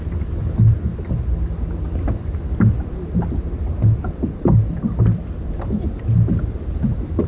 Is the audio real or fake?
real